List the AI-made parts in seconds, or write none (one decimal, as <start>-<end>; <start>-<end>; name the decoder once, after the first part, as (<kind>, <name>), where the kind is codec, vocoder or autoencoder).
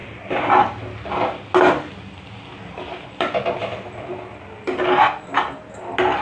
none